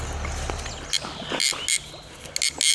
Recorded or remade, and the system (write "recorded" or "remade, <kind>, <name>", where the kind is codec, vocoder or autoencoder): recorded